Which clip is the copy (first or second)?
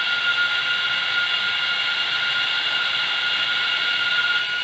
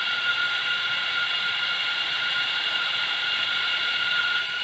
second